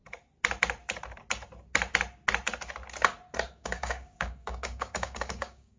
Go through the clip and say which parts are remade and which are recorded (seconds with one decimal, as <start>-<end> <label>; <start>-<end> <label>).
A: 0.0-3.5 recorded; 3.5-5.8 remade